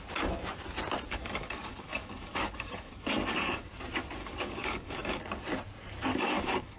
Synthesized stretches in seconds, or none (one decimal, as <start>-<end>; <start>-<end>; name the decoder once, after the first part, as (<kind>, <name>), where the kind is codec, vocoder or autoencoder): 1.1-3.6 (codec, DAC); 4.2-5.2; 6.1-6.8